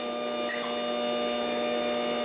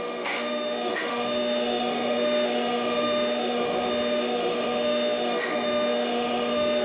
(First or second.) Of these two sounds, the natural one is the first